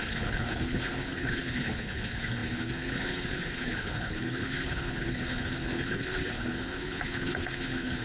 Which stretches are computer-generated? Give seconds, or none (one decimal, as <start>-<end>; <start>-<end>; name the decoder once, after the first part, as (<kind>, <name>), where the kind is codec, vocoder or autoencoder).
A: 0.0-8.0 (codec, HILCodec)